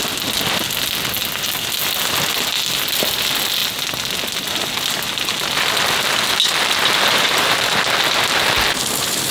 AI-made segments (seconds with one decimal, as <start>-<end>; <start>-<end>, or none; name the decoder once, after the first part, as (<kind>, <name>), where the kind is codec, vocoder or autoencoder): none